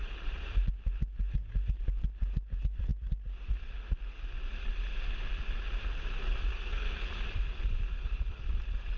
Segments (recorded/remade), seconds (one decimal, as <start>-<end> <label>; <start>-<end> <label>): 0.0-6.5 recorded; 6.5-7.1 remade; 7.1-9.0 recorded